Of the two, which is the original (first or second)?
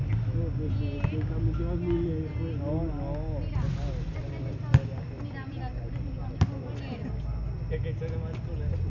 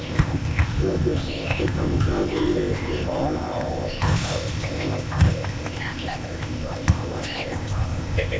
first